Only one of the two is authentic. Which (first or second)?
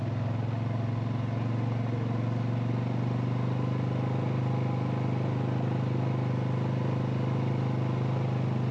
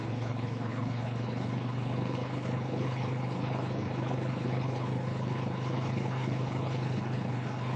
first